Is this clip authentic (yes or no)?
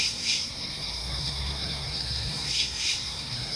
no